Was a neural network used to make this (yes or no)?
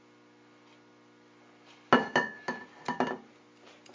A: no